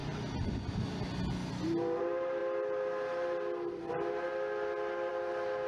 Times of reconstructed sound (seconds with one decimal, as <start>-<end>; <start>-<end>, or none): none